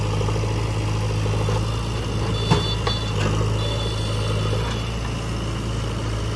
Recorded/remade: recorded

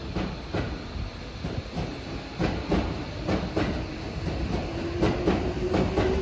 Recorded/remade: recorded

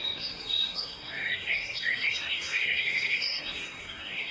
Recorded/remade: remade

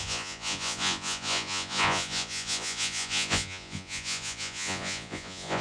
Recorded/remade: remade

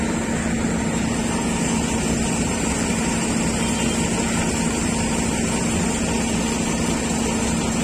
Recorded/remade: recorded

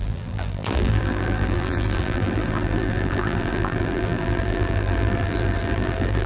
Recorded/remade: remade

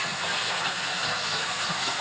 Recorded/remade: remade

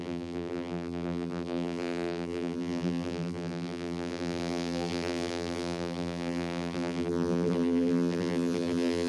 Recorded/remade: remade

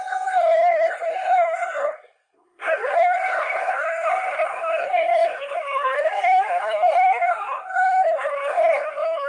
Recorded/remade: remade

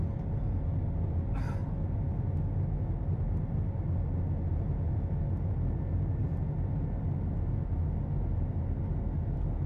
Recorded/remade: recorded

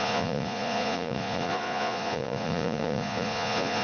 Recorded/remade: remade